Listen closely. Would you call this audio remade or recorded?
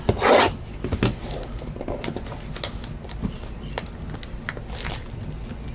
recorded